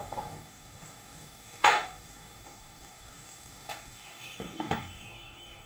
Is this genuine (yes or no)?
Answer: no